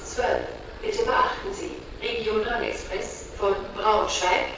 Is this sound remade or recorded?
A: remade